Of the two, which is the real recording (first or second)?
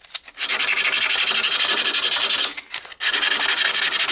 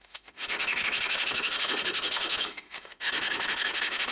first